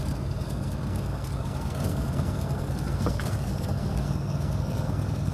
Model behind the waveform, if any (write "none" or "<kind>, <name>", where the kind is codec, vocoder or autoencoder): codec, SNAC